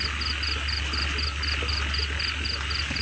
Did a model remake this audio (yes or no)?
no